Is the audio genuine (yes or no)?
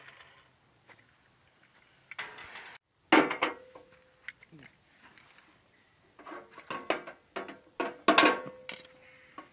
yes